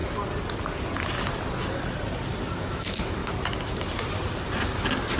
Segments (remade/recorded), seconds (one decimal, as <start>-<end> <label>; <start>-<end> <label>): 0.0-2.6 recorded; 2.6-3.2 remade; 3.2-5.2 recorded